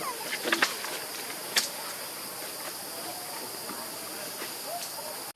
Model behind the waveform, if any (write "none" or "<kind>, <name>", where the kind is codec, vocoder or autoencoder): none